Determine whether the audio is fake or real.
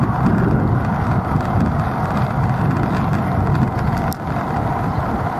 real